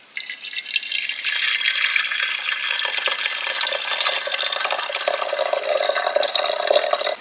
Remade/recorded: recorded